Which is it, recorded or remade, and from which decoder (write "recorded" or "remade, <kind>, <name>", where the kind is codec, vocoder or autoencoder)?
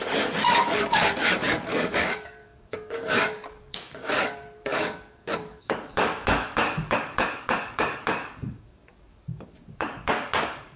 remade, codec, DAC